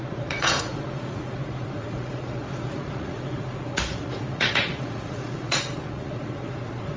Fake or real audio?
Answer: fake